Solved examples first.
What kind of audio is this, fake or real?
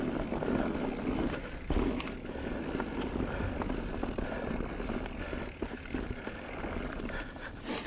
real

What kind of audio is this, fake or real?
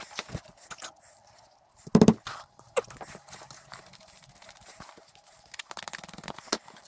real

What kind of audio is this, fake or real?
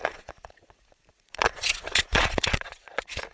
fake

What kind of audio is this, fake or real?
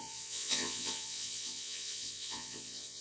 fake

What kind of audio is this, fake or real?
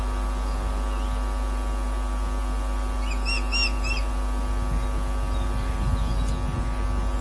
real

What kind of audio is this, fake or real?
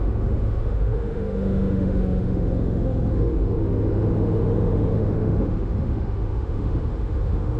fake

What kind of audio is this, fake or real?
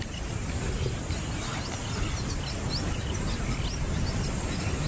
real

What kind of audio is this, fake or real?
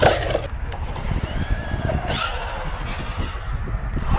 real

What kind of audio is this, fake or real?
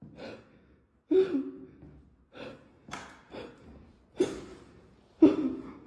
real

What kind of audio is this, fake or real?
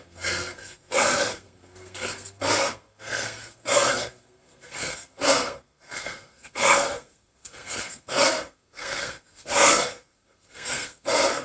fake